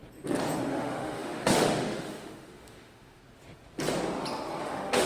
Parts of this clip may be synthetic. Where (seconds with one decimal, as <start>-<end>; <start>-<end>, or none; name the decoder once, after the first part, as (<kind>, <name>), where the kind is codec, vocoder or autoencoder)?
0.7-3.2 (autoencoder, DAC-VAE); 4.6-5.1